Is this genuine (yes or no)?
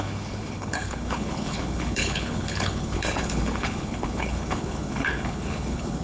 no